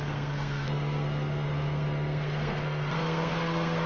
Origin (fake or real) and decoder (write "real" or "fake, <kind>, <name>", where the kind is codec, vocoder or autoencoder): fake, codec, SNAC